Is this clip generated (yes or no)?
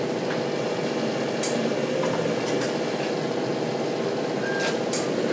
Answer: no